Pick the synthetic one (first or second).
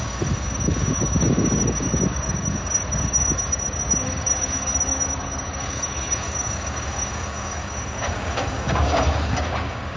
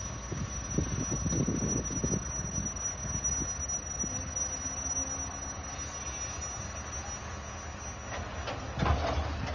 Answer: first